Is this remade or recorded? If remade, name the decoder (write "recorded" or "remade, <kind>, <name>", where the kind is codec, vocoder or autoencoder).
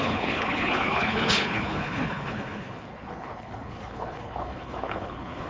remade, codec, HILCodec